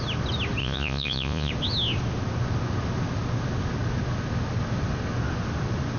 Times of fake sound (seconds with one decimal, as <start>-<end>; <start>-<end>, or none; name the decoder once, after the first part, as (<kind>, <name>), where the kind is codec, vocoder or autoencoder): 0.6-1.5 (vocoder, Vocos)